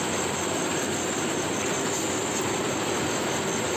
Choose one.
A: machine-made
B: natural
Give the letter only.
B